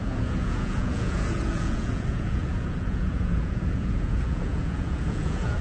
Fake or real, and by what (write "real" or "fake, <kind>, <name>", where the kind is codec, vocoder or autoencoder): fake, vocoder, Vocos